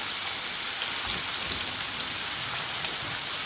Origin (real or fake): real